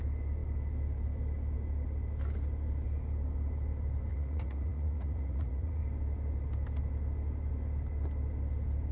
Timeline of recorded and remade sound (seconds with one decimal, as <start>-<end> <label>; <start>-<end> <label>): 0.0-4.1 recorded; 4.1-5.8 remade; 5.8-8.9 recorded